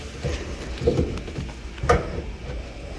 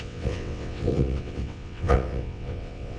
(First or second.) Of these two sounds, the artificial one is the second